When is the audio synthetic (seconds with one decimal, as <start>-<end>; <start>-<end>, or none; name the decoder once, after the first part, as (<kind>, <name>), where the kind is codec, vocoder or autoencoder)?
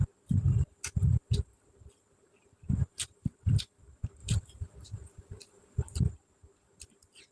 2.9-3.6 (vocoder, BigVGAN v2)